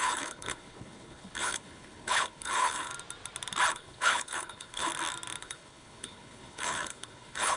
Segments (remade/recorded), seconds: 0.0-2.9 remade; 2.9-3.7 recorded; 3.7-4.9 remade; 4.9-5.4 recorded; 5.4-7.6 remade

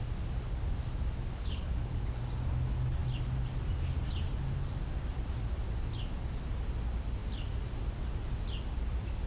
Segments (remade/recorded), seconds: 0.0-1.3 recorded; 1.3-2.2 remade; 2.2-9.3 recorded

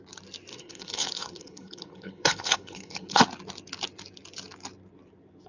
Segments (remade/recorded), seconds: 0.0-0.5 recorded; 0.5-3.2 remade; 3.2-5.5 recorded

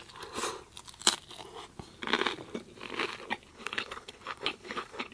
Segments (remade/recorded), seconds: 0.0-3.5 recorded; 3.5-5.1 remade

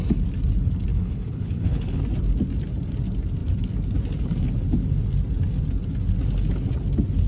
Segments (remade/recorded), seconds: 0.0-0.9 recorded; 0.9-2.0 remade; 2.0-7.3 recorded